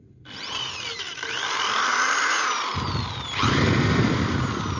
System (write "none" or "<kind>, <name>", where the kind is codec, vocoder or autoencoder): none